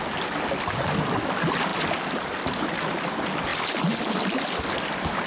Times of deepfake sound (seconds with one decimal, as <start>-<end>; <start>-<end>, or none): none